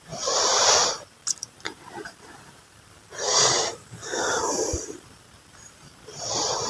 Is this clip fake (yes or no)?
yes